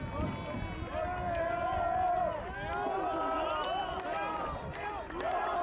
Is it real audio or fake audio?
real